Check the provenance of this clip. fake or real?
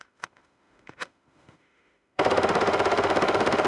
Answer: fake